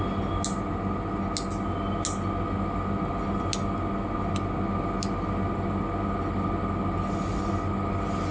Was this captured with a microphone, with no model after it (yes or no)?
yes